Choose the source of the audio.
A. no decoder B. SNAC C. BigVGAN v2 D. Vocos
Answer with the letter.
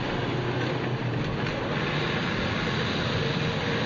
A